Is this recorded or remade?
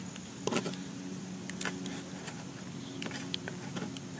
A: recorded